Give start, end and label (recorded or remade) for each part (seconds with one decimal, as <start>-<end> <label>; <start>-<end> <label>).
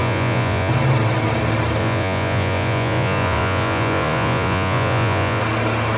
0.0-0.7 remade; 0.7-1.8 recorded; 1.8-5.4 remade; 5.4-6.0 recorded